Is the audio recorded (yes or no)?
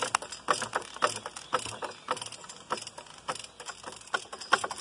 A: yes